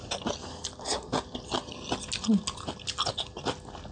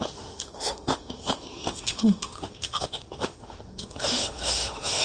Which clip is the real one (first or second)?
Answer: first